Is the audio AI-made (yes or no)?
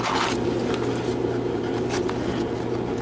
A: no